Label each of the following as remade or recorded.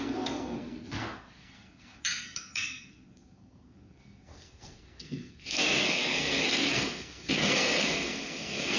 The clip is remade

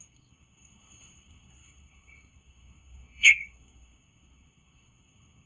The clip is remade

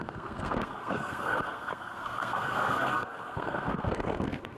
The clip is remade